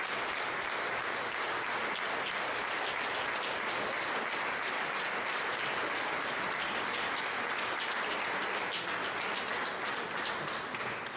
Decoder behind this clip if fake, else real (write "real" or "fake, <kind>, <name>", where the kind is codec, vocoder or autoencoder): real